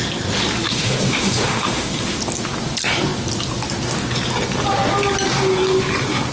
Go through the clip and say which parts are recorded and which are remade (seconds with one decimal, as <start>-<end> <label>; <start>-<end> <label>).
0.0-0.7 recorded; 0.7-2.2 remade; 2.2-6.3 recorded